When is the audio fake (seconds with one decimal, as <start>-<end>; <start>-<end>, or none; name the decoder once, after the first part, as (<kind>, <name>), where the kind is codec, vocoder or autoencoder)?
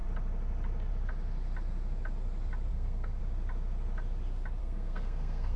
2.7-3.2 (codec, SNAC); 4.6-5.6